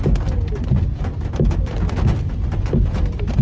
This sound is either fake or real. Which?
real